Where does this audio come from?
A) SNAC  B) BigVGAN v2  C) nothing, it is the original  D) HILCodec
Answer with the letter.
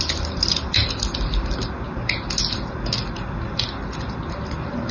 C